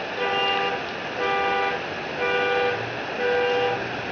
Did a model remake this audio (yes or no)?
no